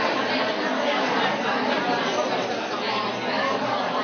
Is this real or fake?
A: real